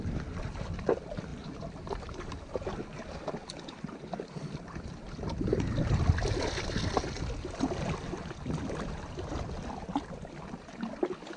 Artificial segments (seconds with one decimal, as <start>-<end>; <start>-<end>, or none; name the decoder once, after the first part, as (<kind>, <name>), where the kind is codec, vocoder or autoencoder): 1.3-2.8 (vocoder, BigVGAN v2)

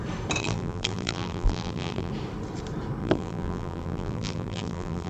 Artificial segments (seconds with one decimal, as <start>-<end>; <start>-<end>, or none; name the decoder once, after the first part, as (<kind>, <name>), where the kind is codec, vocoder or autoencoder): 0.4-2.1 (vocoder, BigVGAN v2); 3.0-5.1

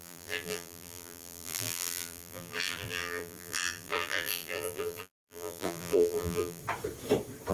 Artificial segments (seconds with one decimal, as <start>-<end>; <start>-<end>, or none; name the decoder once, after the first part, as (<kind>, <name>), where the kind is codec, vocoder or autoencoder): 0.0-6.6 (vocoder, BigVGAN v2)